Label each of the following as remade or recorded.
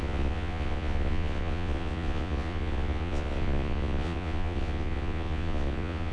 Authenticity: remade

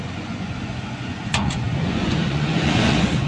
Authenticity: remade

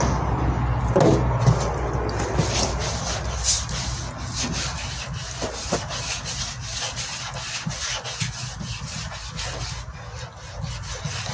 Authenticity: recorded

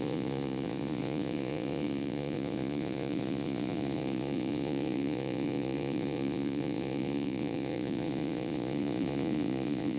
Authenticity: remade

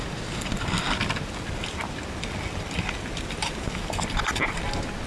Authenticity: recorded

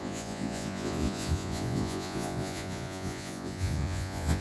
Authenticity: remade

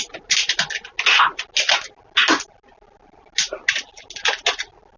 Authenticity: recorded